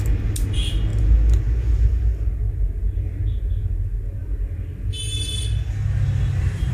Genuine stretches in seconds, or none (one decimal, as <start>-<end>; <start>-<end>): 0.0-6.7